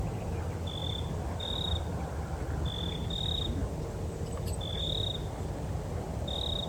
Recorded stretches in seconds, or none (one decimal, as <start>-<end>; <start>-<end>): 0.0-0.8; 2.6-6.7